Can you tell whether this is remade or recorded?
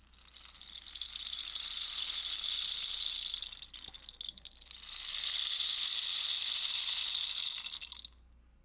recorded